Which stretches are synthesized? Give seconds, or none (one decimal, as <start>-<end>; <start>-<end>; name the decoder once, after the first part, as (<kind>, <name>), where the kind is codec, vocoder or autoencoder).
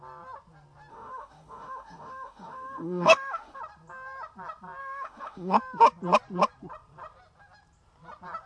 0.9-3.6 (autoencoder, DAC-VAE); 4.8-5.6